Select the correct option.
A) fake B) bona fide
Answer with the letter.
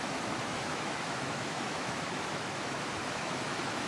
A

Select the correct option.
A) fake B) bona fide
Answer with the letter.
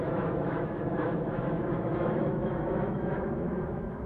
A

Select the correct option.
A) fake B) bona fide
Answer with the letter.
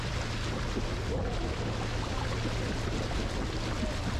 B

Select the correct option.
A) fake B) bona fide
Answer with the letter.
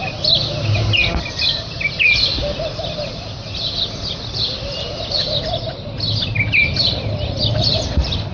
B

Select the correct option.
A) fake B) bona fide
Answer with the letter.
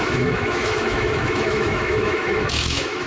A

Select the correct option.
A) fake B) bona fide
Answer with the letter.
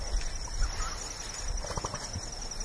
B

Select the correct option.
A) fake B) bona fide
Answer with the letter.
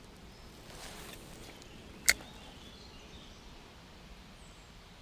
B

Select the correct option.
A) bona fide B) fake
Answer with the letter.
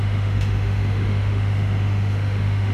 B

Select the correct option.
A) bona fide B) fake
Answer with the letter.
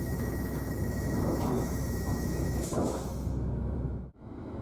B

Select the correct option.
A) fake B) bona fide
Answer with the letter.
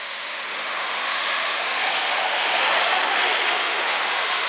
A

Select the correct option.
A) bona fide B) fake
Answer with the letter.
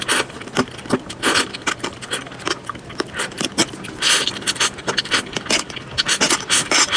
A